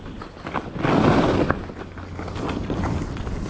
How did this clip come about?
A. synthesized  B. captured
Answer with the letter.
B